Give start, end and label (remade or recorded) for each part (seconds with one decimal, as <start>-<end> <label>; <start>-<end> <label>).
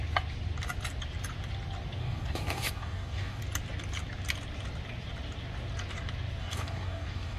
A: 0.0-2.0 recorded; 2.0-3.4 remade; 3.4-6.4 recorded; 6.4-7.4 remade